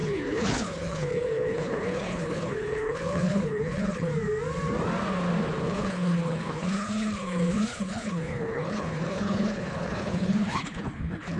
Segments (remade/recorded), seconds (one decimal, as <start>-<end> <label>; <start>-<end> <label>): 0.0-4.1 remade; 4.1-5.6 recorded; 5.6-11.4 remade